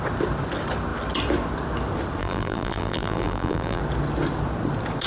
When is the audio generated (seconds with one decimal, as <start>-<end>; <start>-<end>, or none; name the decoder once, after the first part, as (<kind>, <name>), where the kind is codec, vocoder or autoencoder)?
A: 2.2-3.8 (vocoder, BigVGAN v2)